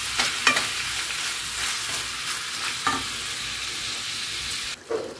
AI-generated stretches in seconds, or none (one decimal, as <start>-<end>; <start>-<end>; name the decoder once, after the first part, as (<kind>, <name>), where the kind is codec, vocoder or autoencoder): none